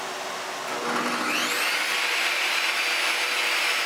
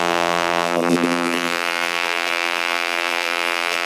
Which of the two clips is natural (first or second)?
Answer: first